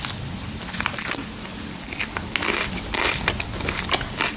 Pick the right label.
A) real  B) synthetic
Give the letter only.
A